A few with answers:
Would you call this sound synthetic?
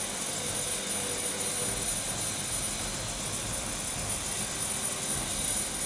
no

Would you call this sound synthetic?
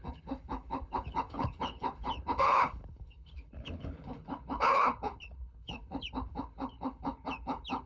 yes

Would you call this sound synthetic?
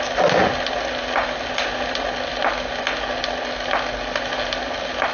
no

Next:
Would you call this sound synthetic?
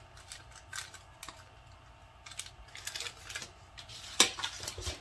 no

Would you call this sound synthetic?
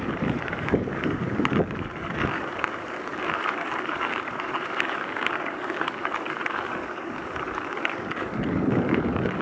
yes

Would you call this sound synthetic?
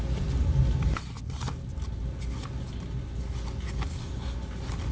no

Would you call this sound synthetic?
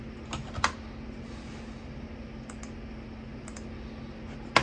no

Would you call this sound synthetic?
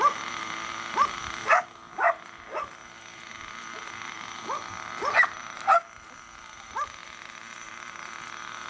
no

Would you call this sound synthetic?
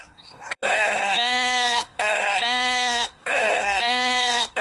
yes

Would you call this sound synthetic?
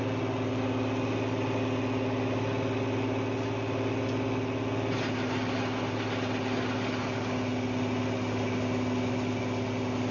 no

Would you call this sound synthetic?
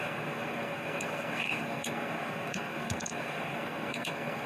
yes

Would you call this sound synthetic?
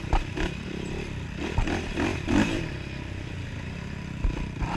no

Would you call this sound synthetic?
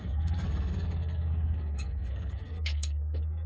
yes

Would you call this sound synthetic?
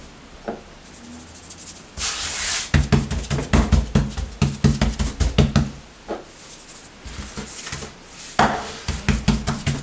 no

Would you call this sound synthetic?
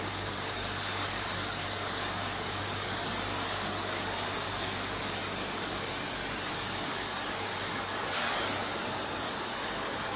yes